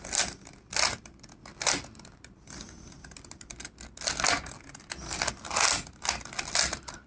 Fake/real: real